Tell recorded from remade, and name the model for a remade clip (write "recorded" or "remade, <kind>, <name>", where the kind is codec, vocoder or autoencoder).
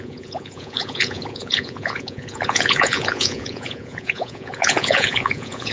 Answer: remade, vocoder, Vocos